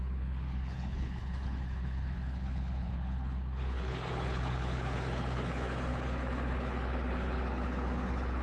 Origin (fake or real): fake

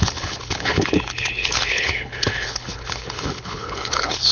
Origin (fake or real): fake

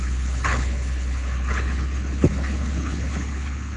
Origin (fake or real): fake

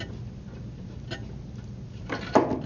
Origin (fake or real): real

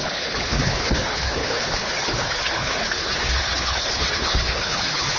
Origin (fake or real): fake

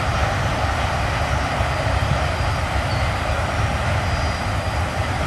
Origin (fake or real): real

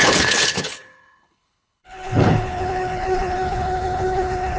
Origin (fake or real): fake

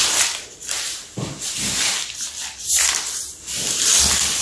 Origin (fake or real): real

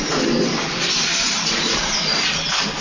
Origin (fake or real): real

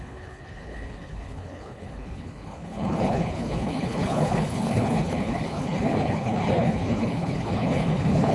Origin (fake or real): fake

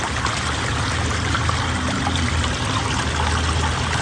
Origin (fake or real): real